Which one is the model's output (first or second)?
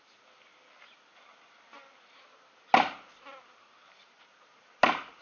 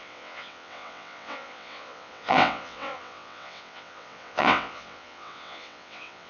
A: second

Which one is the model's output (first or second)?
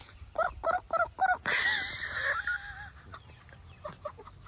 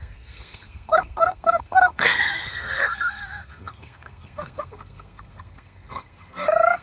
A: second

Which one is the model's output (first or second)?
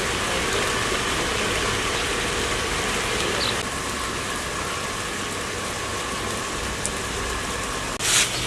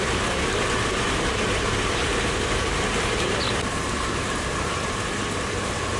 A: second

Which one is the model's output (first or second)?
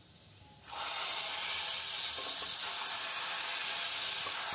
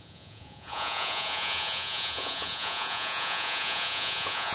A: second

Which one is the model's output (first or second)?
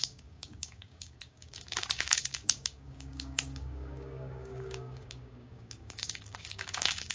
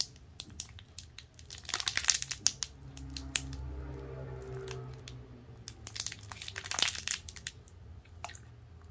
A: first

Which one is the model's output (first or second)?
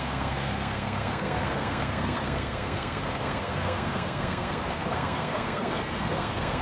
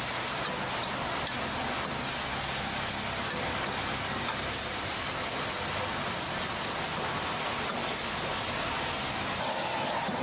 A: first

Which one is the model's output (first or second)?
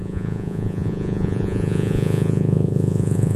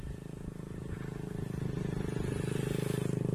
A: first